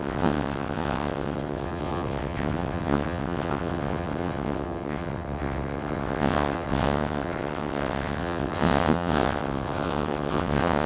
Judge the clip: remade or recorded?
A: remade